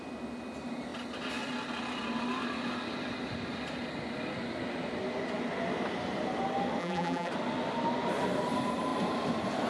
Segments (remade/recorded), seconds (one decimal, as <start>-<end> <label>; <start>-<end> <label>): 0.0-6.8 recorded; 6.8-7.3 remade; 7.3-9.7 recorded